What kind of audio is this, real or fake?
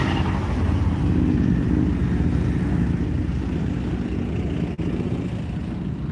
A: real